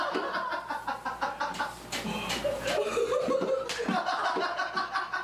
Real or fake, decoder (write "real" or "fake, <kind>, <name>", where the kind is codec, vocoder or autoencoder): real